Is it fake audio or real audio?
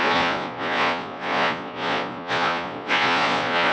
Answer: fake